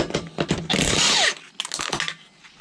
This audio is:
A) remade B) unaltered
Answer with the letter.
B